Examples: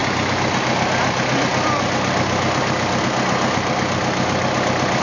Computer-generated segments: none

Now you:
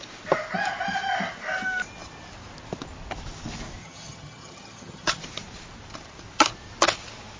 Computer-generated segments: 3.8-5.2 (vocoder, HiFi-GAN)

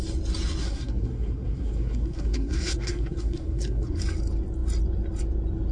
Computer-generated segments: 0.6-4.0 (codec, SNAC)

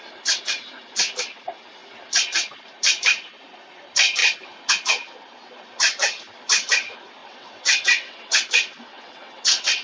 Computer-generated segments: 7.2-8.3 (vocoder, WaveNeXt); 8.9-9.8

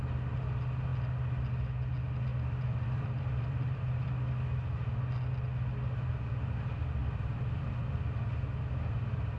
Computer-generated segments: 2.3-4.1 (vocoder, BigVGAN v2); 7.0-8.0